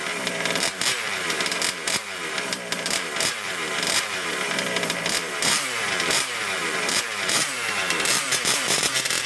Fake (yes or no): yes